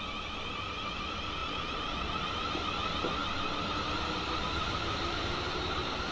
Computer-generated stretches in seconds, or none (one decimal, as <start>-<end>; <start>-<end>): 1.4-2.3